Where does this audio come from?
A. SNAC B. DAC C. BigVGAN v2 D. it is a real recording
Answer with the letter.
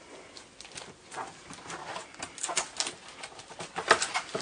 D